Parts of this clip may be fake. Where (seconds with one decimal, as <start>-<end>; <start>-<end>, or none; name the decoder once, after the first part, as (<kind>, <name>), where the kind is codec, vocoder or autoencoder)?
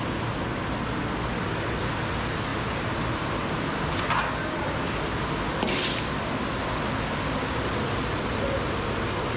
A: 2.5-4.0 (vocoder, BigVGAN v2)